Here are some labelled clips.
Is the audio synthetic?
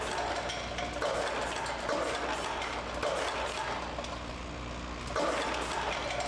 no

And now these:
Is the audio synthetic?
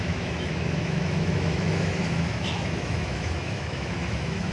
yes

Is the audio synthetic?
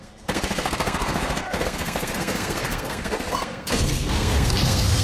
yes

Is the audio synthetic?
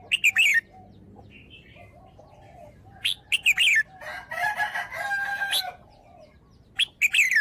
no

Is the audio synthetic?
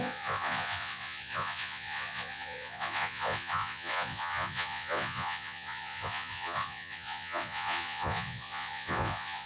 yes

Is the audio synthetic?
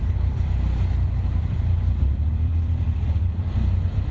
yes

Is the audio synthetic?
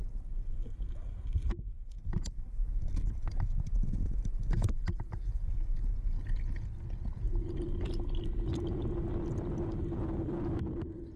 no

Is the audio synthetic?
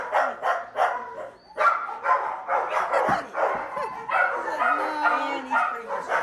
no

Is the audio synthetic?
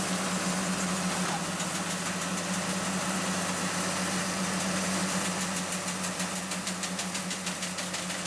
no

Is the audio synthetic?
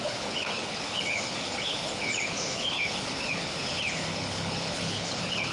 yes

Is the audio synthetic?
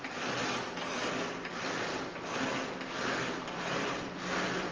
no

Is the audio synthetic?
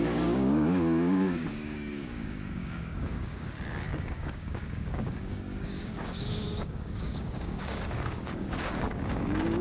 yes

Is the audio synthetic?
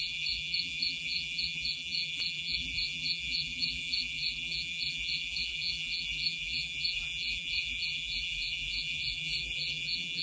yes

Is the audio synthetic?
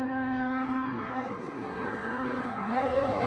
yes